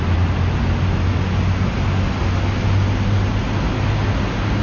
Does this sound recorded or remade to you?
recorded